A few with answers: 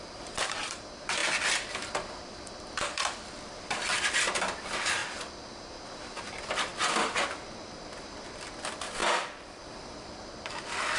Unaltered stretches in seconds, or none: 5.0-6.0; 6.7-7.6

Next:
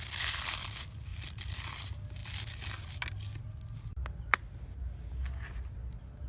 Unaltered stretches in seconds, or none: 0.0-1.1; 1.8-6.3

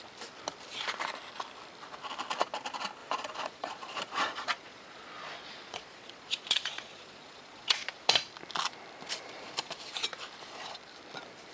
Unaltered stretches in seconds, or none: 0.0-3.0; 8.1-11.5

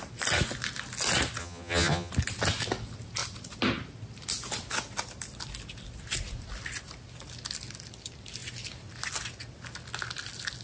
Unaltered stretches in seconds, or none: 0.0-1.4; 2.1-10.6

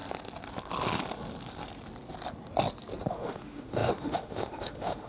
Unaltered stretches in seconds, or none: 0.0-3.1

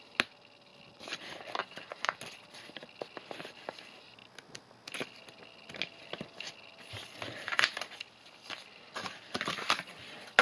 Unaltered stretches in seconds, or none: 0.0-1.6; 2.2-10.4

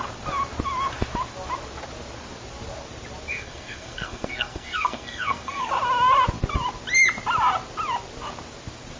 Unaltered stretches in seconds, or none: 0.0-3.3; 5.7-9.0